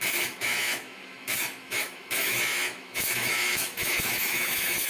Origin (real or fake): fake